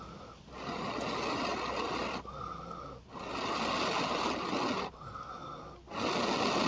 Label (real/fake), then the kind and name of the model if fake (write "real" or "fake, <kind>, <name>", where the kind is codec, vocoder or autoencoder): real